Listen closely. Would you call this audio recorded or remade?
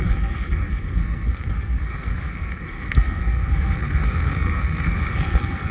remade